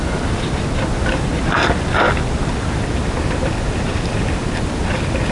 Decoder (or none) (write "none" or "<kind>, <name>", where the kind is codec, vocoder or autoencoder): none